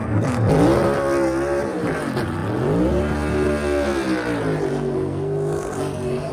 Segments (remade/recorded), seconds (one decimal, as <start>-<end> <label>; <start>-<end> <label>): 0.0-0.5 remade; 0.5-4.7 recorded; 4.7-6.3 remade